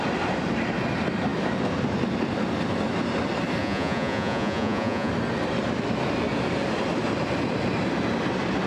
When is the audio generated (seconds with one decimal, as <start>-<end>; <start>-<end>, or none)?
3.6-5.1